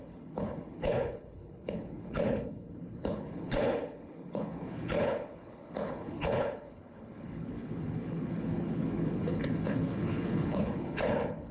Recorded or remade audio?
remade